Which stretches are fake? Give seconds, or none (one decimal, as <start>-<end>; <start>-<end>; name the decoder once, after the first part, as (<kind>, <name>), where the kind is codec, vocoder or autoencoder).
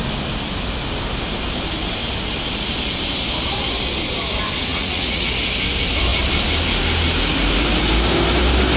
4.7-5.3 (vocoder, Vocos)